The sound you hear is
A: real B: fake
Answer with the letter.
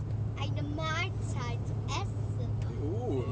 A